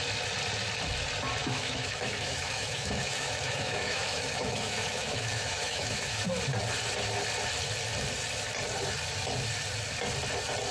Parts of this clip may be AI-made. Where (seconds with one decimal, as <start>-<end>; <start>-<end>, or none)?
1.4-6.2